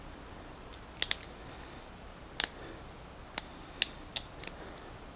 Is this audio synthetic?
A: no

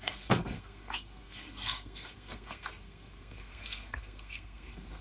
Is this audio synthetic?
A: yes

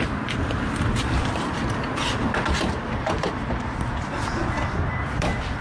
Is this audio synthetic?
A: no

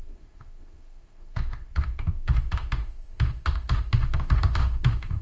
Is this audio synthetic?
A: yes